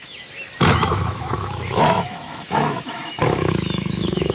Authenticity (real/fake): fake